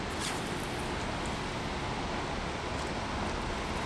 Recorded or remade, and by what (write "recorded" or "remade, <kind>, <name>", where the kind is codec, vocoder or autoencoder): recorded